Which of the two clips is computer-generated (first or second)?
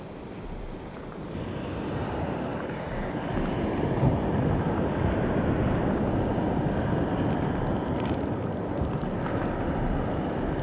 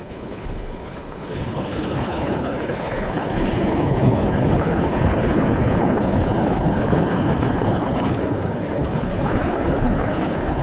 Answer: second